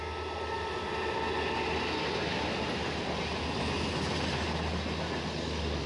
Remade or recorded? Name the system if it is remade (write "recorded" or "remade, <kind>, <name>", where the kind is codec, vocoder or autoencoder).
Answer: recorded